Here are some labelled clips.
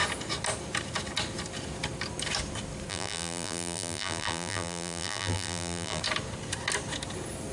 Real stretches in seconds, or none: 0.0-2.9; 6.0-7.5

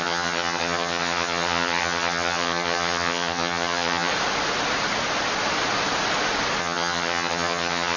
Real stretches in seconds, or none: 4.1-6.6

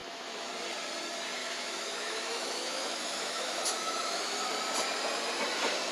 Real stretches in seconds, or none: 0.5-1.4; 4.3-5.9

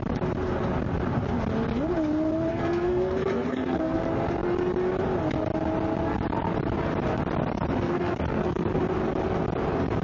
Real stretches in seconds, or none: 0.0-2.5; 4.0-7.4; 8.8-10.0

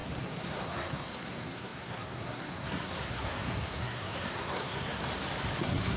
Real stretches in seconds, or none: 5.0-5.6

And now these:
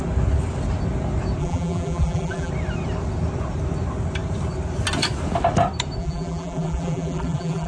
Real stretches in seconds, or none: 0.0-1.4; 2.5-6.0